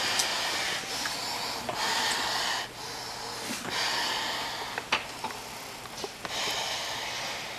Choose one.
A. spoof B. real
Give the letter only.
B